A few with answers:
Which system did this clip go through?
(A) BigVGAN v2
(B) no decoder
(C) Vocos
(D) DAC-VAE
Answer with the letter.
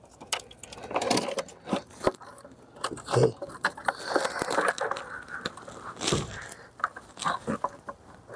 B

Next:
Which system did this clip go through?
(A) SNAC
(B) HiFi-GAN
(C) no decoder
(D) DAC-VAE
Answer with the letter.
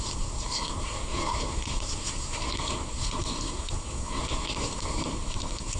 A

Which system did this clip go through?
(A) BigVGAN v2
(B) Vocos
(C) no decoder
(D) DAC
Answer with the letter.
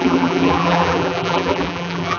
A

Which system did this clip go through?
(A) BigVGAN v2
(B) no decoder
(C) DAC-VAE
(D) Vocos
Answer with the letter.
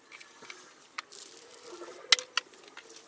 B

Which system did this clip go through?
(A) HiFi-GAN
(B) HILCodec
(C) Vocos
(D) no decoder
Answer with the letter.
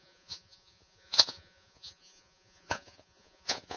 C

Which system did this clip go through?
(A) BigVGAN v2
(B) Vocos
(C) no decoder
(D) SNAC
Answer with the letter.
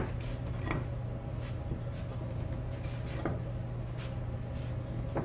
C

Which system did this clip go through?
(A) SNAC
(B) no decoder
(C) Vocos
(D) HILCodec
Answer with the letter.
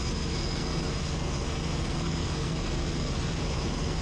A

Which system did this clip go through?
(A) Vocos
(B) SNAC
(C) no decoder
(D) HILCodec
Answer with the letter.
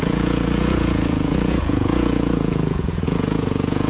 A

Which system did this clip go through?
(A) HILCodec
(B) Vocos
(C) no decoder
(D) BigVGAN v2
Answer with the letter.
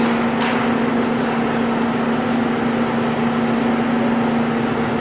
C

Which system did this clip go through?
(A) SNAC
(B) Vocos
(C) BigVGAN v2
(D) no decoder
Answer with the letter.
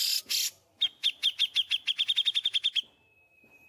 D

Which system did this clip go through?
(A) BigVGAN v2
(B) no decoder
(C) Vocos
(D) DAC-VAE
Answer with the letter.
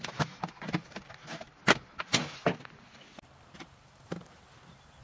B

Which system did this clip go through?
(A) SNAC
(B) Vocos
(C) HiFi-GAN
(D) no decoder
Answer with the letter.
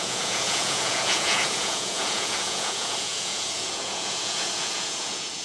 B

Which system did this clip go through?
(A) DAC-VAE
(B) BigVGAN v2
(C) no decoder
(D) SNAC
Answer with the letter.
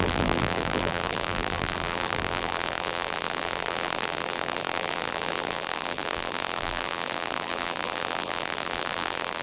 B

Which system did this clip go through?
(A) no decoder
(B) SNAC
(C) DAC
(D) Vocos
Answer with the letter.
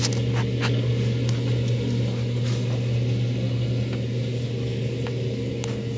A